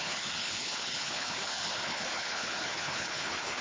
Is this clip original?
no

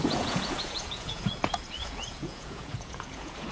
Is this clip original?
no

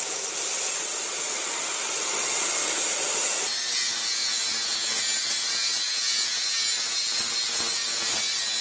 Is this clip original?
yes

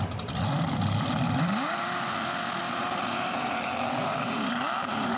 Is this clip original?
no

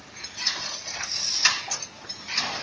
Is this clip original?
yes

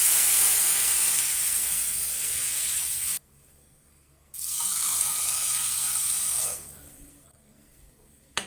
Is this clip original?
no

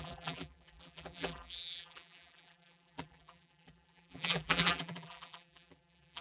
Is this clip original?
no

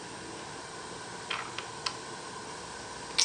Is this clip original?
yes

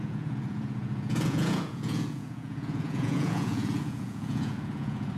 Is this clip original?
no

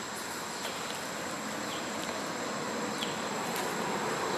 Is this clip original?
yes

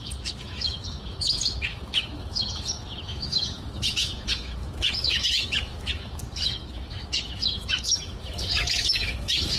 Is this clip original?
no